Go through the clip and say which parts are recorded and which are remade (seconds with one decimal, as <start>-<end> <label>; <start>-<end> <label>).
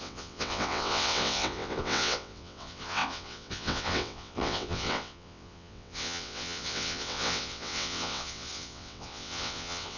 0.0-10.0 remade